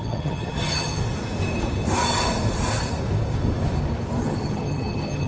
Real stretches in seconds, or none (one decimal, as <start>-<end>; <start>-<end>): 1.0-4.2